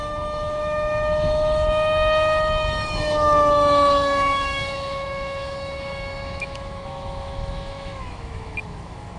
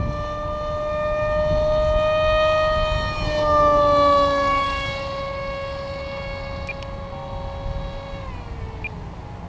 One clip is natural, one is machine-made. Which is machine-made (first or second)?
first